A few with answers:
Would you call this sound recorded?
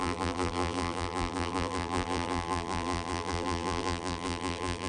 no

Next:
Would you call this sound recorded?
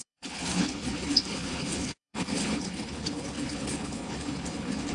no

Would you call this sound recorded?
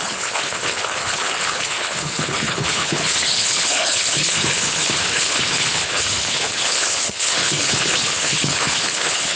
no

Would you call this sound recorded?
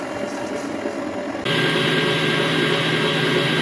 yes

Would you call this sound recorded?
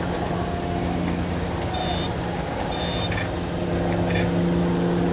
yes